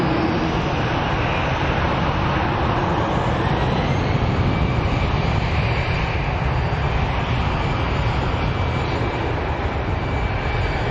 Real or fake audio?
real